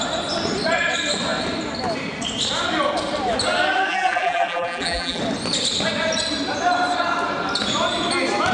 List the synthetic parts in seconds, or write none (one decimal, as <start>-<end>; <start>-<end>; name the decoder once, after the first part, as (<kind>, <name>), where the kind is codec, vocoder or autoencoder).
3.9-5.2 (vocoder, BigVGAN v2)